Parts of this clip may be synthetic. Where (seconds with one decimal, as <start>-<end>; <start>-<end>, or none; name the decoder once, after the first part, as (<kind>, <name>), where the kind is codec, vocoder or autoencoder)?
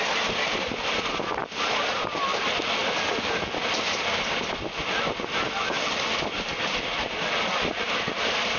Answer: 1.4-2.3 (vocoder, BigVGAN v2); 2.8-3.6